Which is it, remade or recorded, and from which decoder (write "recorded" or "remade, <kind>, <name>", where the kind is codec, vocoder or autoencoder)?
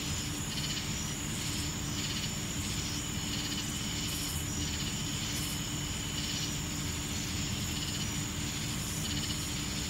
recorded